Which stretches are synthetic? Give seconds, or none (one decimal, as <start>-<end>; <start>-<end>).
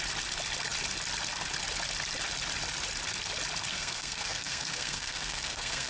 3.7-5.9